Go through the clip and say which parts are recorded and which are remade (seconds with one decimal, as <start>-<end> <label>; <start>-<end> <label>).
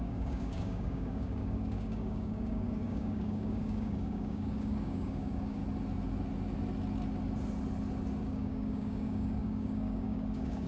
0.0-5.6 remade; 5.6-8.2 recorded; 8.2-10.7 remade